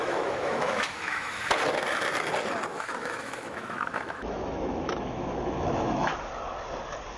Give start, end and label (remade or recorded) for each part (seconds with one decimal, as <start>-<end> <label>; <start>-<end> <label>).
0.0-1.5 remade; 1.5-2.7 recorded; 2.7-6.2 remade; 6.2-7.2 recorded